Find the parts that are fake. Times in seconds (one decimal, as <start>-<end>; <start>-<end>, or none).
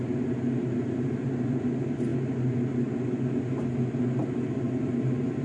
none